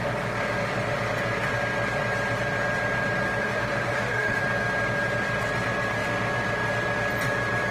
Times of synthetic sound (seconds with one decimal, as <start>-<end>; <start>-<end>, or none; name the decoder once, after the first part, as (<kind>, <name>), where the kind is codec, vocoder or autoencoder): 3.4-4.4 (autoencoder, DAC-VAE)